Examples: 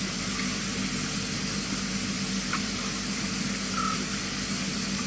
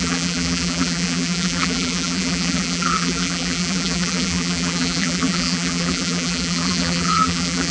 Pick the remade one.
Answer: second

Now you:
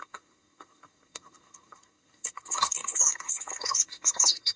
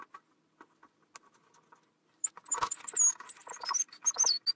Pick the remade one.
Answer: first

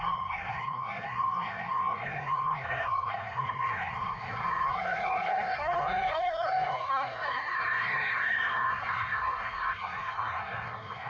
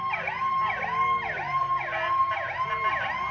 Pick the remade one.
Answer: first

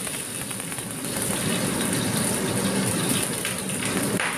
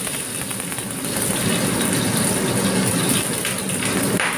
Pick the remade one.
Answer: first